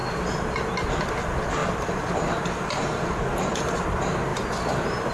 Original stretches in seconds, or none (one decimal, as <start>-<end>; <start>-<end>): 0.0-1.6; 3.2-4.3